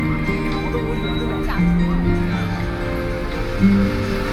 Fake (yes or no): no